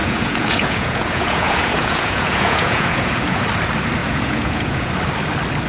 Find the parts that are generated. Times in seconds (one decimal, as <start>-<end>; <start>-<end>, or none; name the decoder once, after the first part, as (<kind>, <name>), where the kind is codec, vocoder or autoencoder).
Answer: 0.0-3.4 (vocoder, Vocos); 4.0-4.9